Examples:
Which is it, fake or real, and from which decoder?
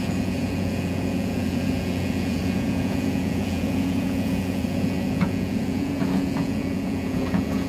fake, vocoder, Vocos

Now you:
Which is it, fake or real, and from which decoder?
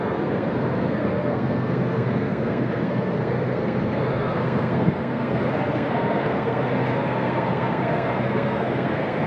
fake, codec, SNAC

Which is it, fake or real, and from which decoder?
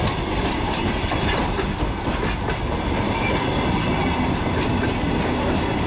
real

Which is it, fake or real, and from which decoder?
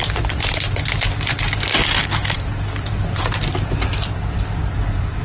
fake, vocoder, BigVGAN v2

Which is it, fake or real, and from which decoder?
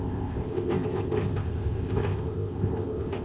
fake, codec, ZipCodec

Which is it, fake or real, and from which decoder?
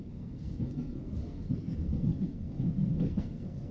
fake, codec, SNAC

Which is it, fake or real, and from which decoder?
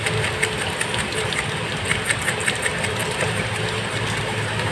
real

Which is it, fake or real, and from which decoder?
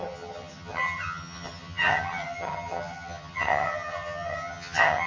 fake, vocoder, HiFi-GAN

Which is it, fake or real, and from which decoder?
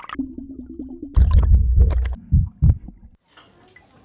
real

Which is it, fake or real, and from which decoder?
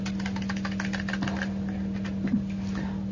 real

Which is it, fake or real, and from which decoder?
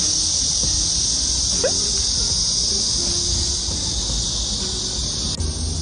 real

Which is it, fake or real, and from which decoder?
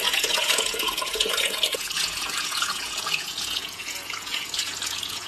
fake, vocoder, Vocos